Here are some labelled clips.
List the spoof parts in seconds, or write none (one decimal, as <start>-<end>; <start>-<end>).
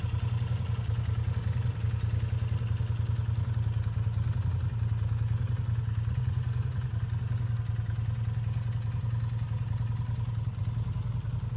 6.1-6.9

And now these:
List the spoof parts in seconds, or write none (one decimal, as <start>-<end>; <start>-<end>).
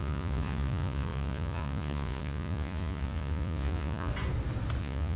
0.0-4.1; 4.8-5.2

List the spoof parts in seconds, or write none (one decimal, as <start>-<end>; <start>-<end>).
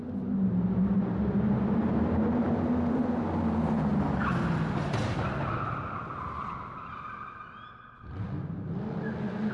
none